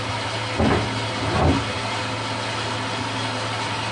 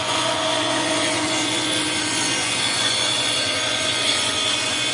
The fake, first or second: second